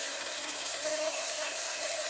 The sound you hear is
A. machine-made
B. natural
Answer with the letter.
A